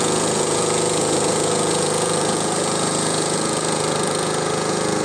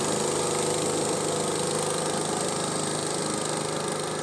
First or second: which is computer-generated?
first